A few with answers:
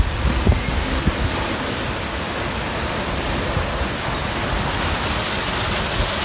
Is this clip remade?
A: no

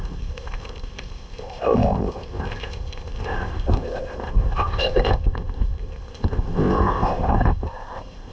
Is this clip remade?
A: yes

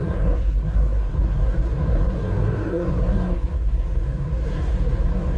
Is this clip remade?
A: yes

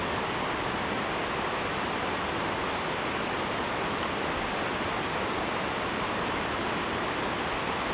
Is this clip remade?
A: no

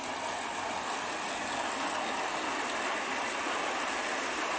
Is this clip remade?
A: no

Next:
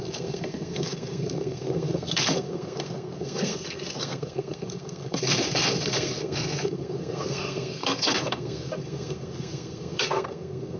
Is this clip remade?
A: yes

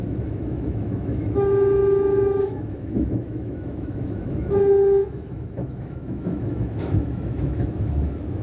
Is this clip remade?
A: yes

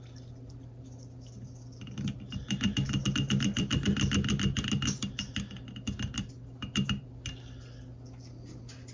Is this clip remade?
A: no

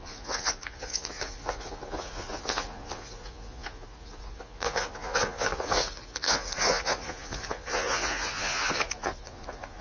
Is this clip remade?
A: yes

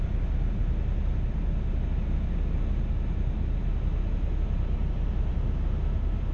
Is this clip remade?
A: no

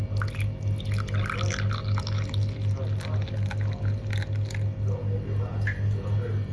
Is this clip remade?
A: no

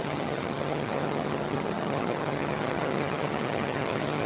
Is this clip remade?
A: yes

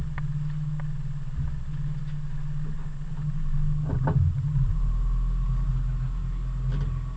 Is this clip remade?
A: no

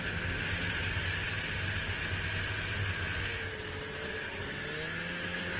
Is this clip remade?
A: no